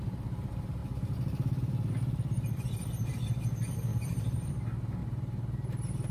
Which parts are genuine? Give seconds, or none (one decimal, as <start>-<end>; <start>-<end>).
0.0-3.9; 4.5-6.1